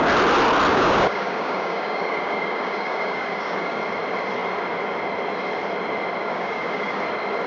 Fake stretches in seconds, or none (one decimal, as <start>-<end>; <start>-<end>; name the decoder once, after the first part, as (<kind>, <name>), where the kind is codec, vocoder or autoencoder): 0.7-3.8 (codec, DAC); 6.2-7.0